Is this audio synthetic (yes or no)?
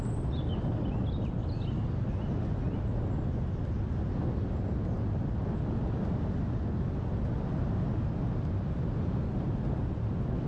no